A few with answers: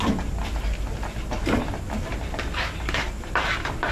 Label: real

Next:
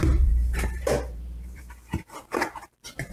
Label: fake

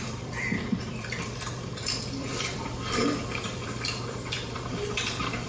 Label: fake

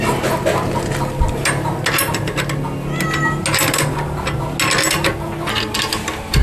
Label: real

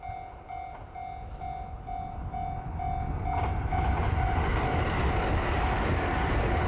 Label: real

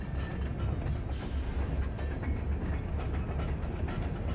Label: real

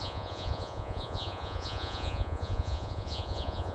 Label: fake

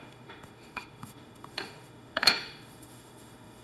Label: fake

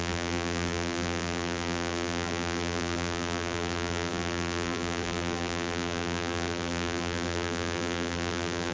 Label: fake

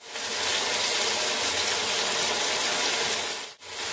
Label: real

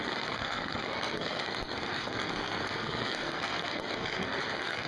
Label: fake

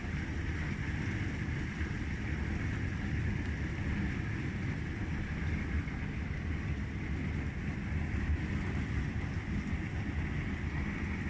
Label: real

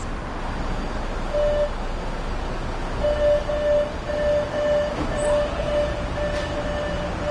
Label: real